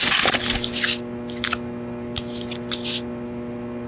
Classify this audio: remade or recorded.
recorded